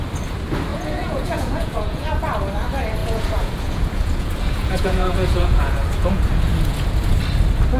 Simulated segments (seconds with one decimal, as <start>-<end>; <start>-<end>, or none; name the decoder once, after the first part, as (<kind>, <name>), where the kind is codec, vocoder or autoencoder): 0.7-2.2 (vocoder, Vocos); 3.0-7.2